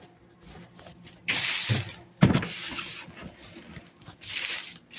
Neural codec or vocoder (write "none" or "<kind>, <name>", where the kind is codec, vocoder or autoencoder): vocoder, BigVGAN v2